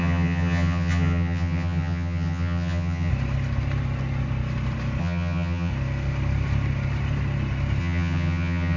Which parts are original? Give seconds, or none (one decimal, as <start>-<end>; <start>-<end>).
3.1-5.0; 5.7-7.8